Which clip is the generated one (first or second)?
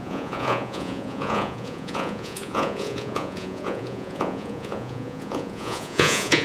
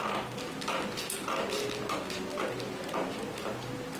first